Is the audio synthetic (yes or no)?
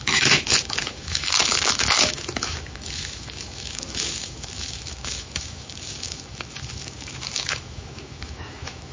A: yes